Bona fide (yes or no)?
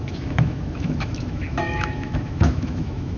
no